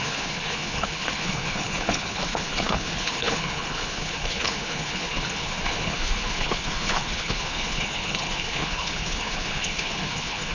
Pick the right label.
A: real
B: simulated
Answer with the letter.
B